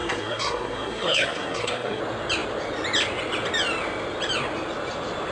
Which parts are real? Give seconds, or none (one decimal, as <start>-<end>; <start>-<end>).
2.0-5.3